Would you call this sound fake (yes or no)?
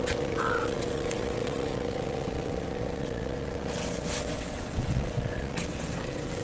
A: yes